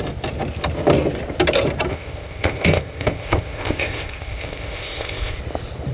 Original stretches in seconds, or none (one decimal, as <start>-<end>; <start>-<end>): 0.0-1.9; 5.4-5.9